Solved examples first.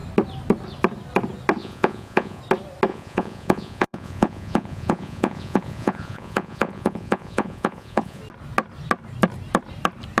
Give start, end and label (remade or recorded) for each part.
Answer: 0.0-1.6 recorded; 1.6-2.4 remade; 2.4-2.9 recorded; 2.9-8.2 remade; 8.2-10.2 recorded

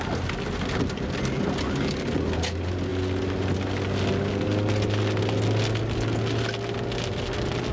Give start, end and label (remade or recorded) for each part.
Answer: 0.0-7.7 recorded